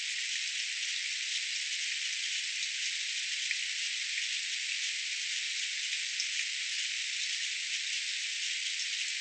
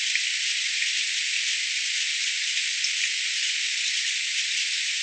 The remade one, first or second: second